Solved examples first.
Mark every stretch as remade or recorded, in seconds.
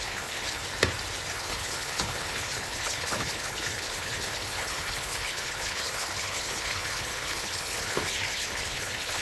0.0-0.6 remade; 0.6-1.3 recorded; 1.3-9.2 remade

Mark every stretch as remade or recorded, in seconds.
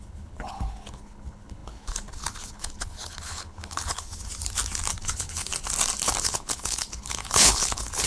0.0-4.3 remade; 4.3-5.0 recorded; 5.0-5.5 remade; 5.5-6.2 recorded; 6.2-8.1 remade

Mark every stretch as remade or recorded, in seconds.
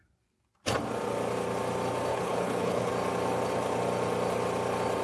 0.0-2.1 recorded; 2.1-2.9 remade; 2.9-5.0 recorded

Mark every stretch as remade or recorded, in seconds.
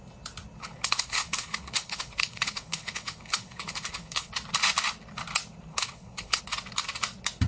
0.0-0.6 recorded; 0.6-4.3 remade; 4.3-5.7 recorded; 5.7-6.4 remade; 6.4-7.5 recorded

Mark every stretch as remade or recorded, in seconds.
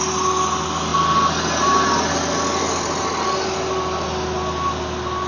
0.0-5.3 recorded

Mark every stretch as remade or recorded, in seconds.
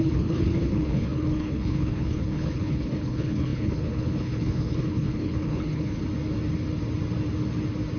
0.0-6.0 remade; 6.0-8.0 recorded